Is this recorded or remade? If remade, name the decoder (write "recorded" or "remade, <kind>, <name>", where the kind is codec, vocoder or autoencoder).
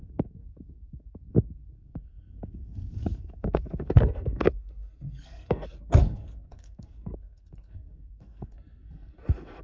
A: remade, codec, SNAC